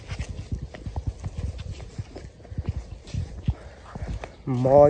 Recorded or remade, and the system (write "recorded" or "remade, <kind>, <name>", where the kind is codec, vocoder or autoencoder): recorded